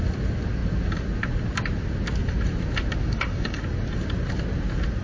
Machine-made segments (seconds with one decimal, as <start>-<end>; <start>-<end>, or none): 3.0-3.6